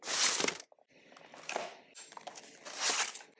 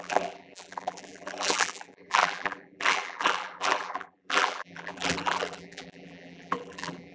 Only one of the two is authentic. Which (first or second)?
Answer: first